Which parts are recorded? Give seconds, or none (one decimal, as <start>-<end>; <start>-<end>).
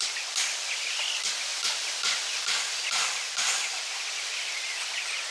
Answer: 0.0-5.3